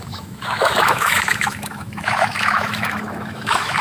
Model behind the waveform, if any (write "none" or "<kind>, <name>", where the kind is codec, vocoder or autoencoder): autoencoder, DAC-VAE